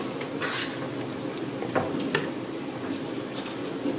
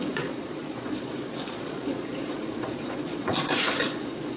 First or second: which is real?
first